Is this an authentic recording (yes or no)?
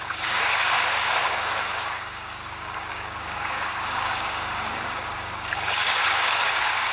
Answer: no